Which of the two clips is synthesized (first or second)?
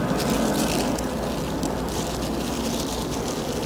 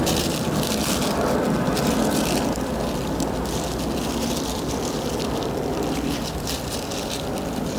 second